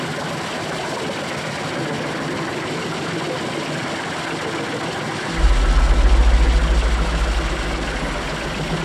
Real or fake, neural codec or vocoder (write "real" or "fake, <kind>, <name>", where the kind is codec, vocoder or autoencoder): real